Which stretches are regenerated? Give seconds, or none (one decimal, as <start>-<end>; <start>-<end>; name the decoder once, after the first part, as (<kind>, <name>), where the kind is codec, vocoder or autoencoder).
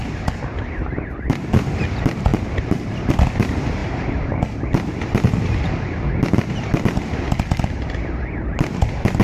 none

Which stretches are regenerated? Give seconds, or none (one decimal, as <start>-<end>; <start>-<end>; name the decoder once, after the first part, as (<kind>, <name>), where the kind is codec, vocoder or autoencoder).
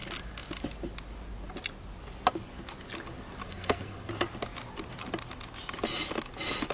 3.4-4.1 (codec, SNAC)